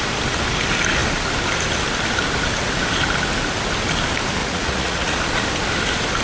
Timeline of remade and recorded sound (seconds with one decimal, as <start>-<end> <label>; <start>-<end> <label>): 0.0-4.4 recorded; 4.4-5.1 remade; 5.1-6.2 recorded